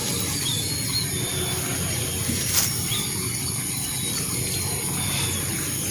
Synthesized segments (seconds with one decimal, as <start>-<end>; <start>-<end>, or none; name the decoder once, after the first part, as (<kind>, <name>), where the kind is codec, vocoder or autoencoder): none